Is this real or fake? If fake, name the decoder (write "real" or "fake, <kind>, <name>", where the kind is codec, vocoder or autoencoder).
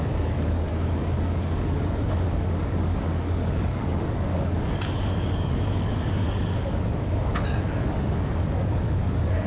fake, codec, DAC